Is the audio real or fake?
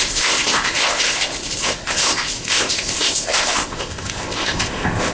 fake